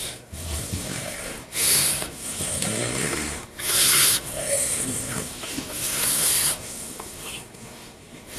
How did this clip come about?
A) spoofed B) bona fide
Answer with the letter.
A